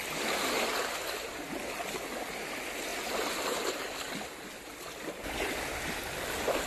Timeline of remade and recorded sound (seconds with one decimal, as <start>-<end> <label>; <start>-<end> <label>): 0.0-6.7 recorded